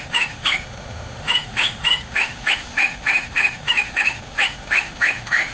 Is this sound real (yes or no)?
no